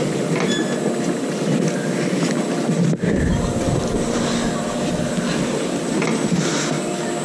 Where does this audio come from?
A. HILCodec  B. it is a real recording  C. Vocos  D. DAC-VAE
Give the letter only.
B